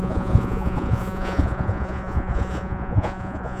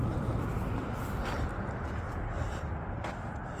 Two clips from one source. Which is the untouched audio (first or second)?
second